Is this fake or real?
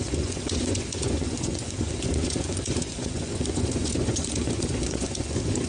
fake